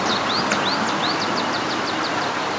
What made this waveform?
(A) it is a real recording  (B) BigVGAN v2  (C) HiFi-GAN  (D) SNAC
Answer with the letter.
A